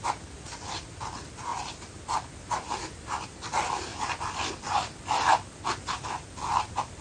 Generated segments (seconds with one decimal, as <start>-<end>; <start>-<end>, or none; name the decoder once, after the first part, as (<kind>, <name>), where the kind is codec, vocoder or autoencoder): none